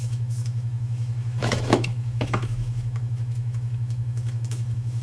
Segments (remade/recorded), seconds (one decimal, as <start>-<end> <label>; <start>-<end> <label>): 0.0-5.0 remade